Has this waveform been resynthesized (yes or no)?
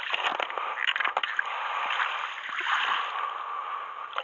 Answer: no